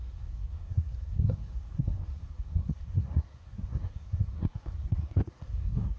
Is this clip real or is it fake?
fake